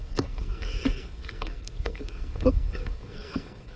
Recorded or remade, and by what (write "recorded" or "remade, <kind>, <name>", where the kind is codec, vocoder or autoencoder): remade, codec, SNAC